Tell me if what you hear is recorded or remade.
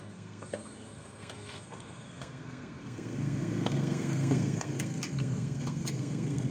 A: remade